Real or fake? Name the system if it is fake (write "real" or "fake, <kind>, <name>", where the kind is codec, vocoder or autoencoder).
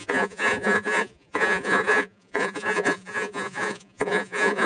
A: fake, vocoder, Vocos